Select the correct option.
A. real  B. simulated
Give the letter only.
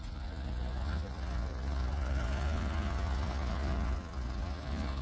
B